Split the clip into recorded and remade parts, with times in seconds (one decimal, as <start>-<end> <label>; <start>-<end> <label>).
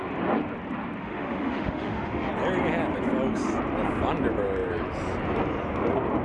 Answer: 0.0-1.0 recorded; 1.0-2.3 remade; 2.3-6.2 recorded